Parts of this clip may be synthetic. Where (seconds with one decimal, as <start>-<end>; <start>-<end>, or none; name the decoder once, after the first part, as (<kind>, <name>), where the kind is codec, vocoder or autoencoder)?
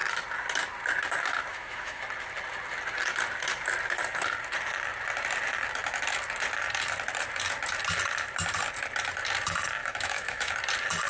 1.5-2.0 (autoencoder, DAC-VAE); 9.8-10.5